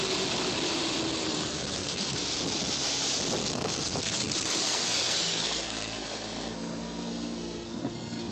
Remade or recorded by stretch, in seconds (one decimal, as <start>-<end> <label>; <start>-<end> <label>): 0.0-1.2 recorded; 1.2-2.2 remade; 2.2-3.4 recorded; 3.4-8.3 remade